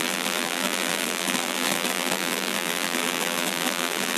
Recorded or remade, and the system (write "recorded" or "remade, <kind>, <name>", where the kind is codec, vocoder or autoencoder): remade, vocoder, BigVGAN v2